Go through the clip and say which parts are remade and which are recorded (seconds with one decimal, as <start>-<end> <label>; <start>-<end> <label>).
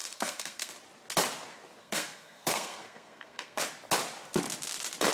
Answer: 0.0-0.7 remade; 0.7-1.8 recorded; 1.8-3.6 remade; 3.6-5.1 recorded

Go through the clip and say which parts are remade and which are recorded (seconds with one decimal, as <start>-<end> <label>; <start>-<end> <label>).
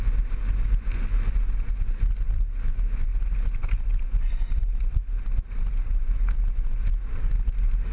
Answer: 0.0-7.9 recorded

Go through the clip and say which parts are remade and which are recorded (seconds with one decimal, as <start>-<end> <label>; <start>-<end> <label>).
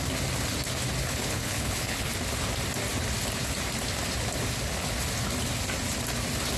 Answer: 0.0-1.0 recorded; 1.0-2.1 remade; 2.1-6.6 recorded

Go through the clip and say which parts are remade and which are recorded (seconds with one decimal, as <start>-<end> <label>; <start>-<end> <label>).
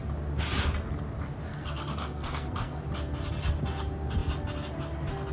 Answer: 0.0-1.5 recorded; 1.5-2.8 remade; 2.8-5.3 recorded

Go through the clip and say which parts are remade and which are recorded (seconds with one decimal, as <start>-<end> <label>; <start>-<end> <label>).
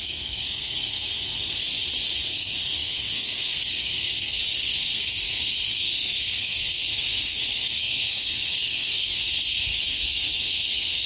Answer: 0.0-1.7 remade; 1.7-2.2 recorded; 2.2-11.1 remade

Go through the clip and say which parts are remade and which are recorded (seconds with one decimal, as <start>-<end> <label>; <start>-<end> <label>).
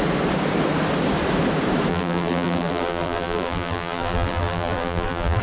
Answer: 0.0-1.9 recorded; 1.9-5.4 remade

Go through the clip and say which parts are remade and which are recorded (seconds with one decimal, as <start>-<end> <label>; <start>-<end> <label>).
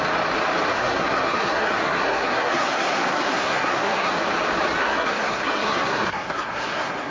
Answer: 0.0-0.7 recorded; 0.7-4.1 remade; 4.1-4.8 recorded; 4.8-7.1 remade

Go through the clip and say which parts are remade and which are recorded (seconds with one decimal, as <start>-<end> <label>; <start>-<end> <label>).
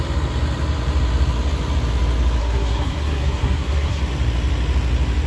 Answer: 0.0-2.4 recorded; 2.4-4.0 remade; 4.0-5.3 recorded